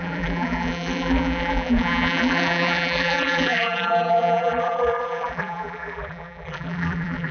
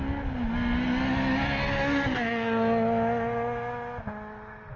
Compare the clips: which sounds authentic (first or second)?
second